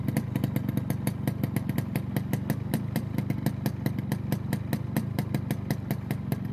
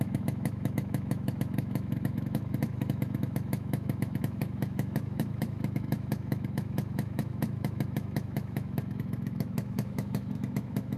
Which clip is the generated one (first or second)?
second